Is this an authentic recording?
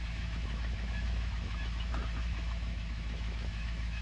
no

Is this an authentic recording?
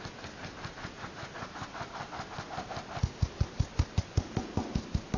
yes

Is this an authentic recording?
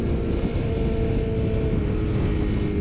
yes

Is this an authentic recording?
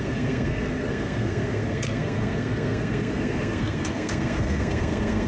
no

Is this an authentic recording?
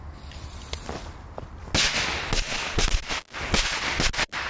yes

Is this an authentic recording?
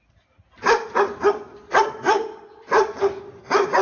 yes